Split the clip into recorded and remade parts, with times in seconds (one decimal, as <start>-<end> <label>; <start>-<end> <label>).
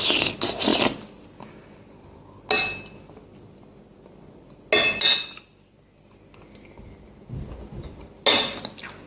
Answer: 0.0-9.1 recorded